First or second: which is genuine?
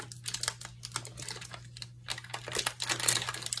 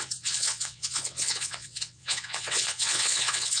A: first